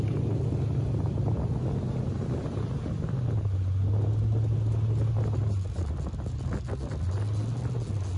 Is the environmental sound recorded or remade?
recorded